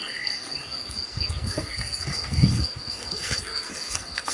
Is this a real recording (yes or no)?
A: no